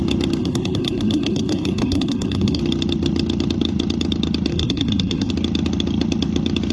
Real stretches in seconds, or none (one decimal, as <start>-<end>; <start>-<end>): 0.0-0.4; 2.6-4.5; 5.3-6.7